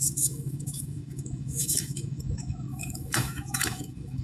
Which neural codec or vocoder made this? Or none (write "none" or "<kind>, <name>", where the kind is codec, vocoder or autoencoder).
autoencoder, DAC-VAE